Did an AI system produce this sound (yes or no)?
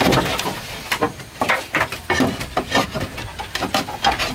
yes